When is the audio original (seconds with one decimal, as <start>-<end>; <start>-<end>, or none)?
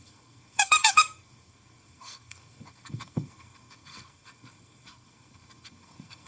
none